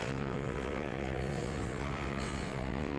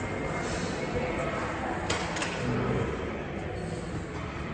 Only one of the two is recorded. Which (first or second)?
second